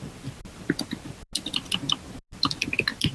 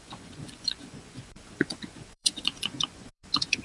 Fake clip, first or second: second